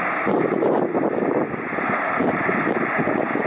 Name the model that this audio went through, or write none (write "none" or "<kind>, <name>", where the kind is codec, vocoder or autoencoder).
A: none